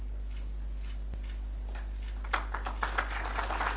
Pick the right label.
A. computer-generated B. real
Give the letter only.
B